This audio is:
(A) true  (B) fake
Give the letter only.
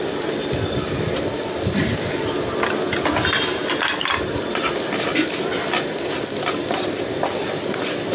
A